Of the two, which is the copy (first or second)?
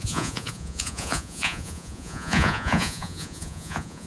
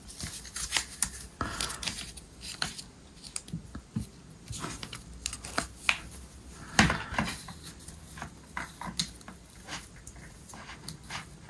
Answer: first